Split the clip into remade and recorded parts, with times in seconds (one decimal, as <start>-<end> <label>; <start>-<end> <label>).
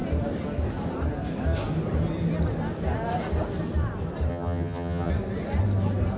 0.0-4.3 recorded; 4.3-5.1 remade; 5.1-6.2 recorded